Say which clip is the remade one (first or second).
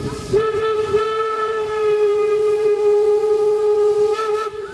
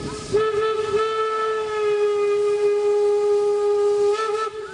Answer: first